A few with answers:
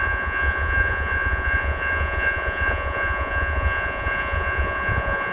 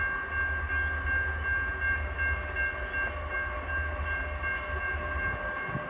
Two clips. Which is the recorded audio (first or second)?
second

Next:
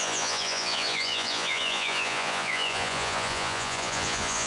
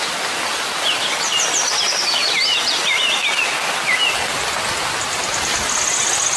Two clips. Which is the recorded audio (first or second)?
second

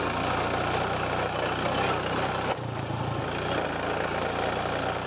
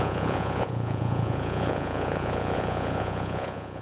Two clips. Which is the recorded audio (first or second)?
first